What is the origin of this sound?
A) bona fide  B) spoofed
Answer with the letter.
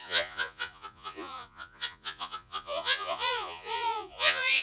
B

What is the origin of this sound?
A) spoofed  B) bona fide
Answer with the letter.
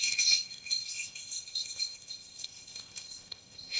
A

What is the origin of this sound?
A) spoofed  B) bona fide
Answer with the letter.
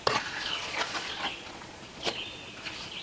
A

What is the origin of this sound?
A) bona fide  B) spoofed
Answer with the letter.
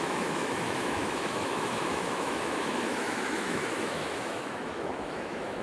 B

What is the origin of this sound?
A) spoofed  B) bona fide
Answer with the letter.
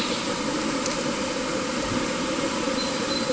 A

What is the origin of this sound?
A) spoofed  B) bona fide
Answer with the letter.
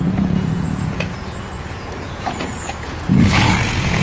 A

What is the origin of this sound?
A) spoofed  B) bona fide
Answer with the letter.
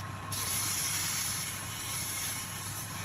A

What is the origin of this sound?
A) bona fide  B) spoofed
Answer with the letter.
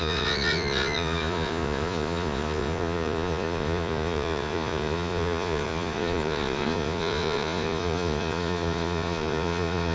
B